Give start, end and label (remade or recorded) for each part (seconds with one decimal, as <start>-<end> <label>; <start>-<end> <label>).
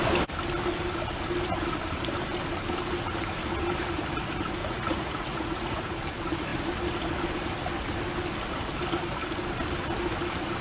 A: 0.0-4.6 recorded; 4.6-6.0 remade; 6.0-10.6 recorded